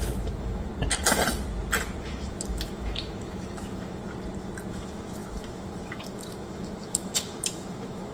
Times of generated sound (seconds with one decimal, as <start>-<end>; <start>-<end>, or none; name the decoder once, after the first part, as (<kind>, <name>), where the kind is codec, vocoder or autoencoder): 0.0-0.7 (autoencoder, DAC-VAE); 2.0-4.0; 4.7-8.1